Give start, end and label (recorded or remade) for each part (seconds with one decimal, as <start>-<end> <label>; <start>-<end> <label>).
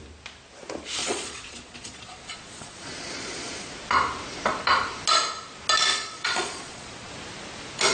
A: 0.0-1.0 recorded; 1.0-3.7 remade; 3.7-5.9 recorded; 5.9-7.1 remade; 7.1-7.9 recorded